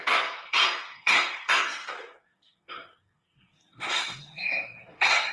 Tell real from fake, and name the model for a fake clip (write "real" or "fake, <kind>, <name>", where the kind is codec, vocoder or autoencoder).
fake, codec, SNAC